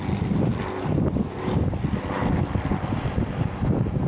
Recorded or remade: recorded